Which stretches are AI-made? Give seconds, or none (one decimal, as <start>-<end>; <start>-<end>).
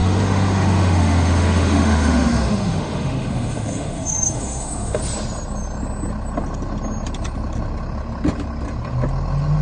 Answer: 0.0-5.0